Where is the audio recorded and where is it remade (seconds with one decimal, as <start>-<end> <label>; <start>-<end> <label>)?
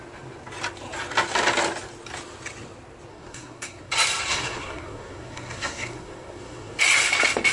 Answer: 0.0-3.1 recorded; 3.1-3.9 remade; 3.9-4.3 recorded; 4.3-6.8 remade; 6.8-7.5 recorded